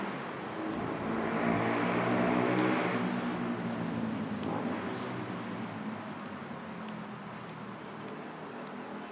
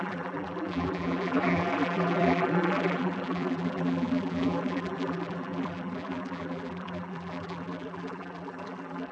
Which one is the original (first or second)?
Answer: first